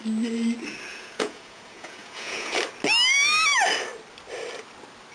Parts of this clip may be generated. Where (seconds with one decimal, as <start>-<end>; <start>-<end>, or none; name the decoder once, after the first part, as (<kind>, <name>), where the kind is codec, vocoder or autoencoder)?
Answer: 0.9-2.6 (vocoder, Vocos)

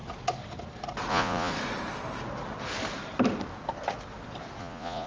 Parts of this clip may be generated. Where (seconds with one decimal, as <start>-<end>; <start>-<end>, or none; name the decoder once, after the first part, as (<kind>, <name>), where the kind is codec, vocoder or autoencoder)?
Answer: 1.1-1.5 (vocoder, Vocos); 4.6-5.1

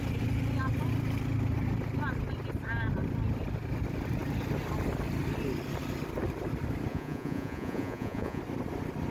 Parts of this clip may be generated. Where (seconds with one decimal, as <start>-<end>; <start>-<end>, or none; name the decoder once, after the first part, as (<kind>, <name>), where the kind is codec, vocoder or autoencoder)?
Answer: 6.9-8.4 (vocoder, Vocos)

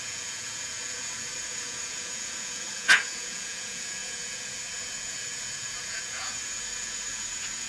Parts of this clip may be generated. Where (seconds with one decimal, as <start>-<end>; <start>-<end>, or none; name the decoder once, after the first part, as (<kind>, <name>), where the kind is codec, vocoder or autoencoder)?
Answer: 0.0-7.7 (vocoder, Vocos)

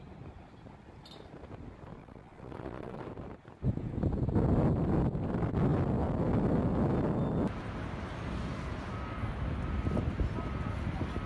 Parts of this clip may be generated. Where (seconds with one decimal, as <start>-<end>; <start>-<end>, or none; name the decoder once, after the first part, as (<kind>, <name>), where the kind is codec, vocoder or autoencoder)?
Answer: 2.0-3.0 (vocoder, Vocos)

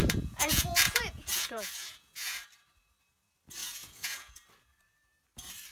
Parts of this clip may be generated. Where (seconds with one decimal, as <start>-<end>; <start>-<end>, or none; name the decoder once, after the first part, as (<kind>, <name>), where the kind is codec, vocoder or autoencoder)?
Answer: 0.0-2.4 (vocoder, Vocos); 3.6-4.4